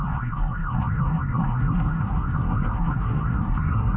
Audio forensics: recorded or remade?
remade